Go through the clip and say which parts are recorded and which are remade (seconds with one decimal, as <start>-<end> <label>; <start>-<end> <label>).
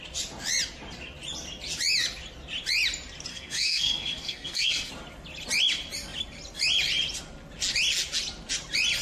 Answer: 0.0-3.3 recorded; 3.3-4.9 remade; 4.9-9.0 recorded